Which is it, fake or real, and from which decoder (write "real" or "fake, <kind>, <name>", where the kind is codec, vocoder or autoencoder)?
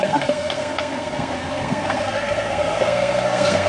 fake, codec, SNAC